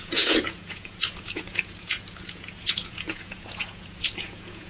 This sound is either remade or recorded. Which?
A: remade